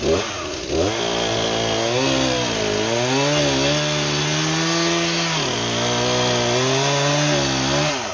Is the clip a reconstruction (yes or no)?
no